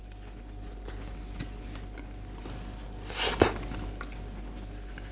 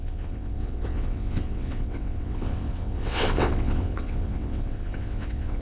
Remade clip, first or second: second